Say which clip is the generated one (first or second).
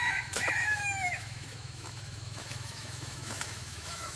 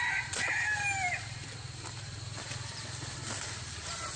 first